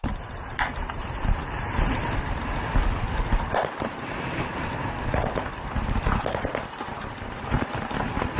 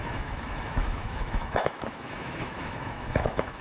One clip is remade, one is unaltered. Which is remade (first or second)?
second